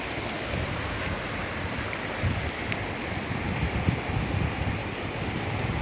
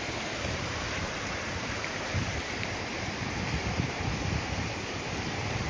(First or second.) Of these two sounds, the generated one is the second